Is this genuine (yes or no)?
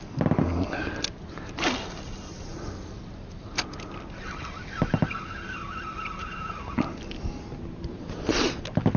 yes